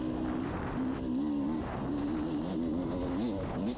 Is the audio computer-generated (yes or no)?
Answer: no